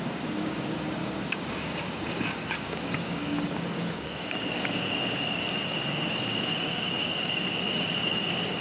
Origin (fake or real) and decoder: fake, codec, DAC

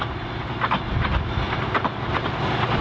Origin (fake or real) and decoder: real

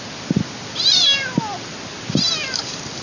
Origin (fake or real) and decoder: real